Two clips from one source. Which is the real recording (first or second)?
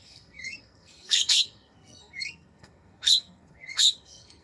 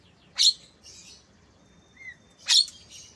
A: second